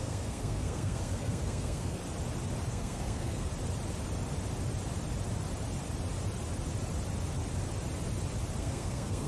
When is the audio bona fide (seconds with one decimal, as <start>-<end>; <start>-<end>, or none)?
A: 2.0-2.7; 3.5-8.6